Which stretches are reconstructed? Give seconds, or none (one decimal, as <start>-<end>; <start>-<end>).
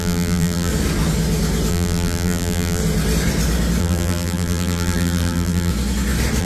0.0-0.7; 1.7-2.8; 3.8-5.7